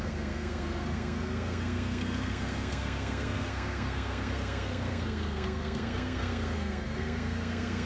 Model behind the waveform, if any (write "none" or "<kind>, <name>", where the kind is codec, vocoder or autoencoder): codec, SNAC